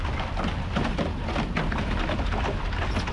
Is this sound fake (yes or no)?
no